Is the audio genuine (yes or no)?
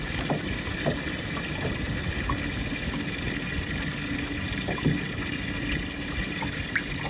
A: yes